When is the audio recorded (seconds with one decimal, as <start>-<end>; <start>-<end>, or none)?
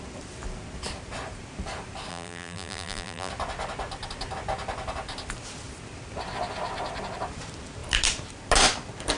0.0-2.1; 3.3-9.2